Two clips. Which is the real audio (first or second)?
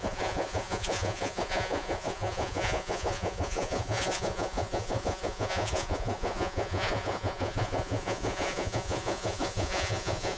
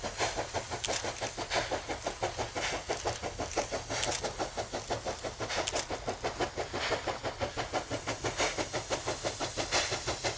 second